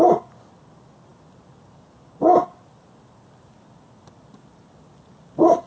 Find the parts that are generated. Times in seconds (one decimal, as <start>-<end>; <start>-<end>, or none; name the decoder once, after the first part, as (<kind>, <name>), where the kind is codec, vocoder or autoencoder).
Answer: none